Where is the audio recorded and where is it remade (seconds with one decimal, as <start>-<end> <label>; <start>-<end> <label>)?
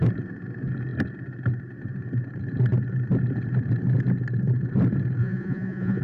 0.0-5.2 recorded; 5.2-6.0 remade